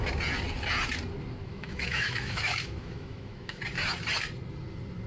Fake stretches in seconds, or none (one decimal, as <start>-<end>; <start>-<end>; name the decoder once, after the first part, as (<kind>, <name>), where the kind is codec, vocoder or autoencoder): 1.4-3.6 (autoencoder, DAC-VAE)